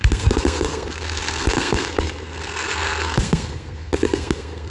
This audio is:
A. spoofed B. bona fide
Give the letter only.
A